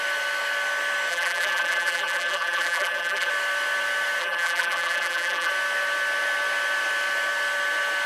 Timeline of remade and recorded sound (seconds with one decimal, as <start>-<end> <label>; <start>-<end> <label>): 0.0-1.1 recorded; 1.1-3.3 remade; 3.3-4.2 recorded; 4.2-5.5 remade; 5.5-8.1 recorded

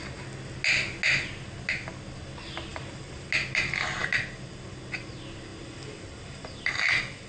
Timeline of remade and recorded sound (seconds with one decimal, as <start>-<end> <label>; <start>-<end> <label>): 0.0-2.7 recorded; 2.7-3.3 remade; 3.3-5.5 recorded; 5.5-6.7 remade; 6.7-7.3 recorded

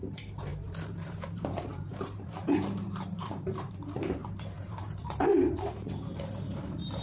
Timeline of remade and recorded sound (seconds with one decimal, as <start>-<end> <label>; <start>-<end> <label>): 0.0-7.0 remade

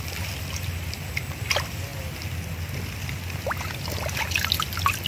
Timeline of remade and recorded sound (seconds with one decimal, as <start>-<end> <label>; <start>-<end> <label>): 0.0-5.1 recorded

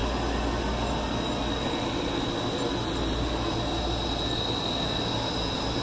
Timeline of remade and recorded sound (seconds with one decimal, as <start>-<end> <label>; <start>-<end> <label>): 0.0-5.8 recorded

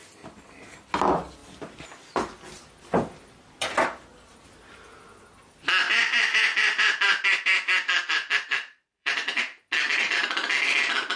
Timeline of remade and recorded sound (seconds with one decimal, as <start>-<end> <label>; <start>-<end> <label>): 0.0-5.9 recorded; 5.9-9.7 remade; 9.7-11.2 recorded

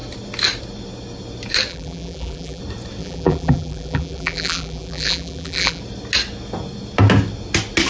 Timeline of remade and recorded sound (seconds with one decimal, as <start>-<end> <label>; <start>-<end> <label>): 0.0-1.7 recorded; 1.7-2.6 remade; 2.6-3.0 recorded; 3.0-5.8 remade; 5.8-7.9 recorded

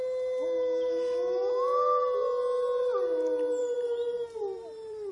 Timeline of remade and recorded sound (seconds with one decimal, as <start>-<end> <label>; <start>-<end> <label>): 0.0-3.6 recorded; 3.6-5.1 remade